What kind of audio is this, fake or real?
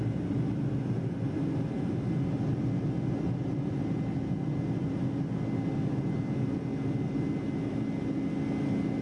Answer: real